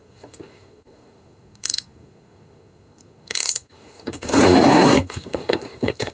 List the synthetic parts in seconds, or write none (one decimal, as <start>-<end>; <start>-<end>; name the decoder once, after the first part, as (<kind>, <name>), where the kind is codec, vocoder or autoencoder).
0.0-6.1 (codec, SNAC)